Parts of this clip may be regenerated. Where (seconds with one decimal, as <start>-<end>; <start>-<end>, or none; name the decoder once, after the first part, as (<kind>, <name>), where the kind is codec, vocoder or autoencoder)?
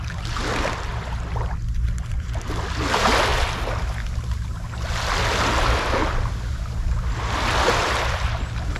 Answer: none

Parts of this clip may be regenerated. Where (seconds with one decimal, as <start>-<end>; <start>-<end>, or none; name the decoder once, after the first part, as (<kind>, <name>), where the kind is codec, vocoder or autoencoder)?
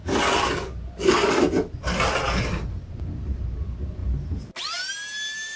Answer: none